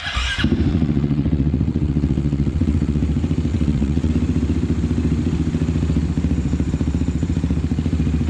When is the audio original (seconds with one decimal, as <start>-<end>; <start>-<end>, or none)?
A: 0.0-0.7; 3.0-3.5; 4.1-8.3